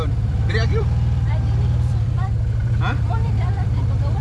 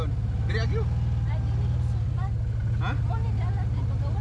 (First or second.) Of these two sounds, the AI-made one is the first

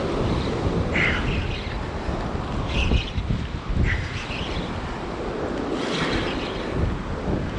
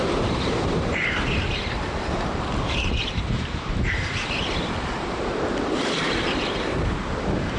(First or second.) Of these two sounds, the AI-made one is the second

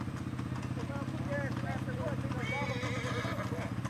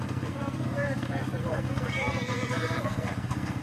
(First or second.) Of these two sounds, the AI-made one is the second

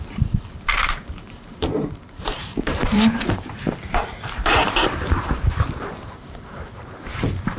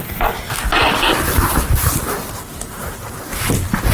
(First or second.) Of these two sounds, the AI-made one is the first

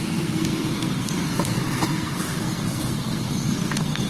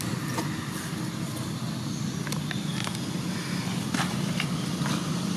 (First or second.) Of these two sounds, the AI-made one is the first